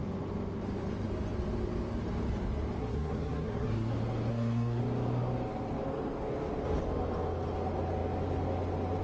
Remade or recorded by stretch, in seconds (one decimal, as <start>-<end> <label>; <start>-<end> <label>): 0.0-2.8 recorded; 2.8-3.9 remade; 3.9-4.3 recorded; 4.3-4.8 remade; 4.8-9.0 recorded